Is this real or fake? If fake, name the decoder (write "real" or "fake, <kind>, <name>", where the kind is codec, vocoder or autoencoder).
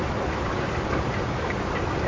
real